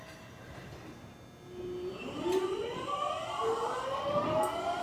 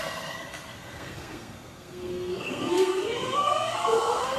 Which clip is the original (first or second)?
first